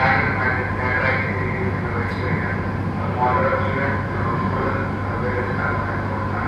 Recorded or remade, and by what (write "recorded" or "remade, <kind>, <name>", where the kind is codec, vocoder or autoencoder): recorded